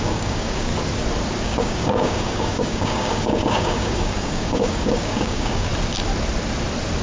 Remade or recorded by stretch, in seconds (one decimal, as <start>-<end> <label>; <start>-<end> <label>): 0.0-0.7 remade; 0.7-1.4 recorded; 1.4-5.7 remade; 5.7-7.0 recorded